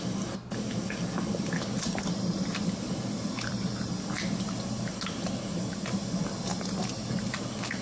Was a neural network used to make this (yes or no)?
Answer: no